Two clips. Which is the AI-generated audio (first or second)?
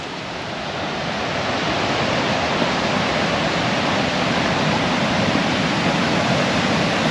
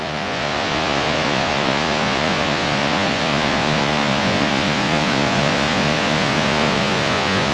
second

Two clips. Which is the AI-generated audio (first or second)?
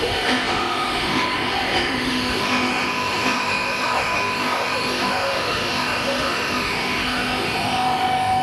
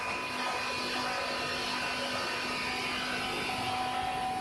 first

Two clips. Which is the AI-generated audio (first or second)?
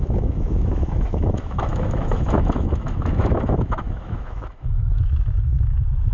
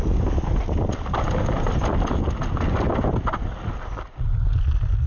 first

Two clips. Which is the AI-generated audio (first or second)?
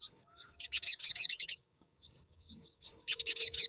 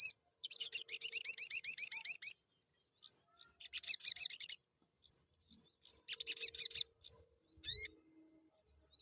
first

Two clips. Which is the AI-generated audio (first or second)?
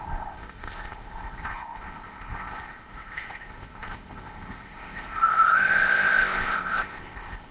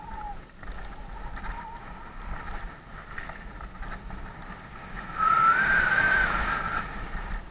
first